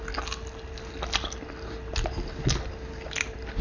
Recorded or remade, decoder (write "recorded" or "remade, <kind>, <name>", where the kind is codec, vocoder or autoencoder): recorded